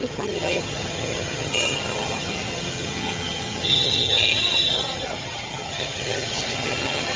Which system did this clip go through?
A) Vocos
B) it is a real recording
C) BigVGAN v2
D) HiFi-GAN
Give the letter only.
D